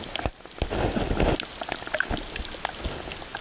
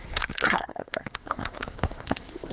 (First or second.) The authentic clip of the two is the first